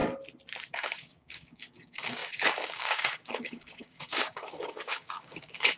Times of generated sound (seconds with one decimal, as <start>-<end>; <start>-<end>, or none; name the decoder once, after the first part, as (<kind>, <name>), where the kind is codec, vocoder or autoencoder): 0.7-5.8 (codec, DAC)

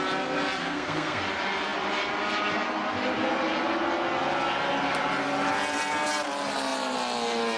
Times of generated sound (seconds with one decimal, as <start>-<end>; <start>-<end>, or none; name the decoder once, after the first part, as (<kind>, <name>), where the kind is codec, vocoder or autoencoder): 0.6-1.2 (codec, SNAC)